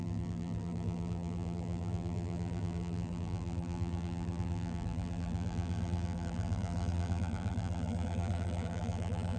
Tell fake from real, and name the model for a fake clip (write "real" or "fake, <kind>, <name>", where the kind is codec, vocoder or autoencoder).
fake, vocoder, BigVGAN v2